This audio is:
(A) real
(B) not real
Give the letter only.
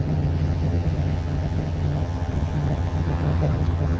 B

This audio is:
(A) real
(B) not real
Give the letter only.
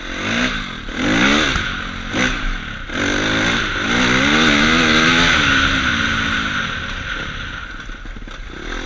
A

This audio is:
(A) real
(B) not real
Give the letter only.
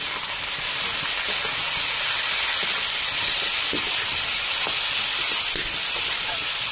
A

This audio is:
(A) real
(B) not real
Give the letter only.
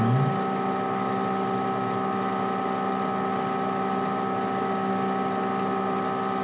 A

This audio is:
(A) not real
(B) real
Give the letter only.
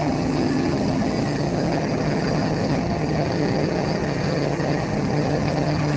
A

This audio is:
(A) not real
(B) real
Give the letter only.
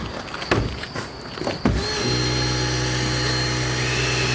B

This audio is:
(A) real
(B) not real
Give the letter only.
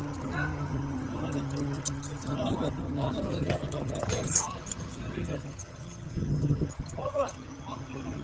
B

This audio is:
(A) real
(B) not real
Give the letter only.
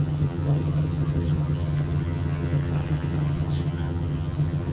B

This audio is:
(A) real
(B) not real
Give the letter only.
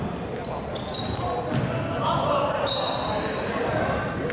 A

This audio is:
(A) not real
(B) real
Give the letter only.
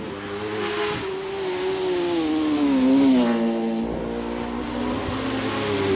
B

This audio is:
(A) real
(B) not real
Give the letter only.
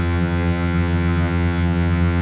B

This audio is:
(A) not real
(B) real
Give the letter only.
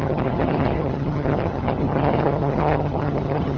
A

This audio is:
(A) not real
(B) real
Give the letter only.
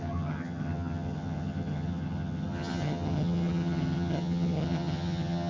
A